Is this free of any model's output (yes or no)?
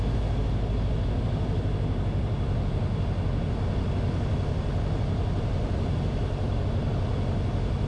yes